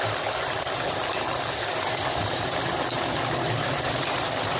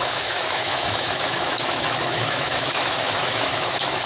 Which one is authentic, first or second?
first